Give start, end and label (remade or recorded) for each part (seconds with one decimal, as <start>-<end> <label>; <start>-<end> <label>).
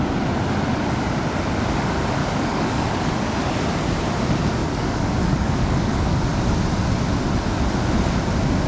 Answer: 0.0-2.2 recorded; 2.2-3.1 remade; 3.1-4.6 recorded; 4.6-6.2 remade; 6.2-8.7 recorded